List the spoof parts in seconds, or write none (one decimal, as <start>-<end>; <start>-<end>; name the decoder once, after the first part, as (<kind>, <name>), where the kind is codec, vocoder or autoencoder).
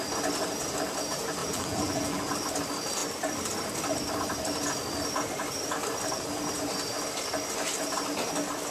1.4-2.2 (vocoder, BigVGAN v2)